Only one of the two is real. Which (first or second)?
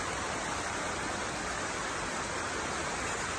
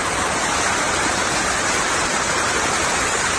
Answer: first